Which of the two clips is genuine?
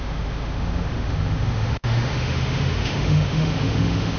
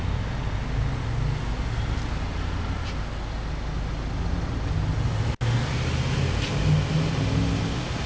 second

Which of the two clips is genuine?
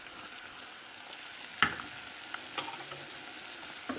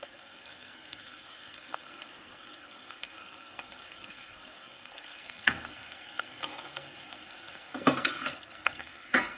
first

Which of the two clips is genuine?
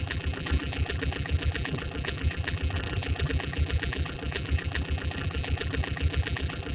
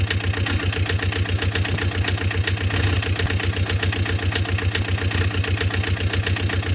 second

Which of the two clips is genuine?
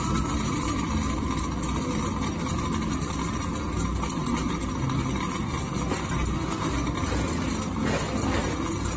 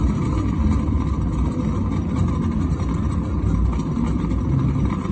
first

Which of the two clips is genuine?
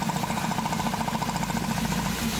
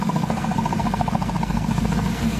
first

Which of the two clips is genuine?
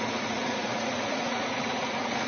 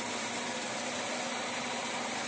second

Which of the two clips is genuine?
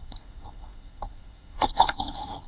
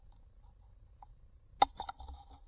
second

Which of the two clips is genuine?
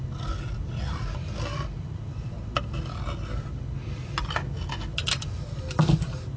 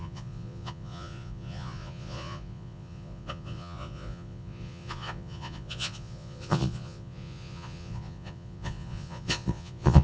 first